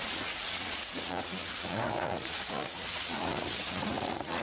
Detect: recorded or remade remade